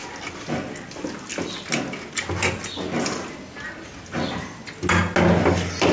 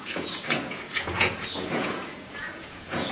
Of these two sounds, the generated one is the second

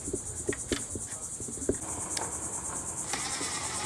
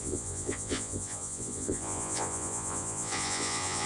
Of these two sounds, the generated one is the second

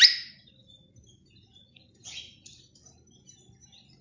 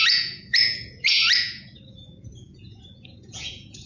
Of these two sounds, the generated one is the second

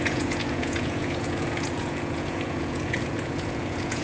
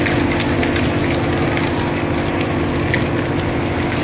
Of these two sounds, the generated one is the first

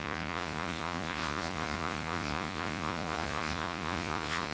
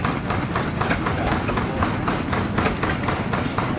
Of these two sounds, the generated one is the first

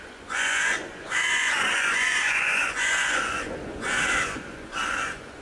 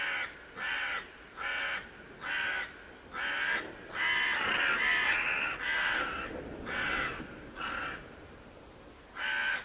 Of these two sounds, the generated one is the first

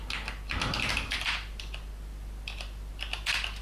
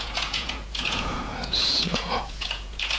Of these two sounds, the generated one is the second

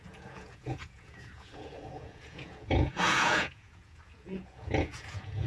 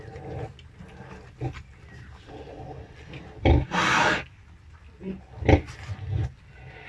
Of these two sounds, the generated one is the first